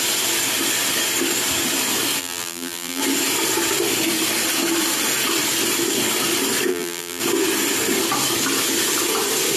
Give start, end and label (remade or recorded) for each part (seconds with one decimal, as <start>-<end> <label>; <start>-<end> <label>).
0.0-2.2 recorded; 2.2-3.0 remade; 3.0-6.7 recorded; 6.7-7.2 remade; 7.2-9.6 recorded